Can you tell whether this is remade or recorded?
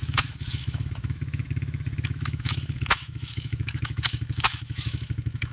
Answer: remade